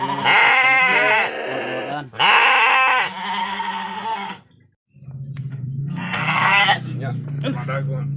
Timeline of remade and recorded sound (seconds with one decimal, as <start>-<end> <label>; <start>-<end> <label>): 0.0-3.4 recorded; 3.4-4.5 remade; 4.5-5.5 recorded; 5.5-6.6 remade; 6.6-8.2 recorded